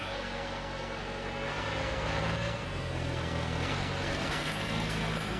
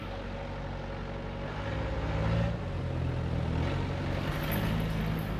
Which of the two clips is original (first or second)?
second